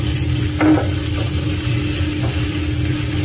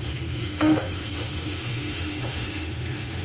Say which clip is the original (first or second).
first